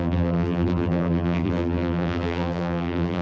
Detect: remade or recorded remade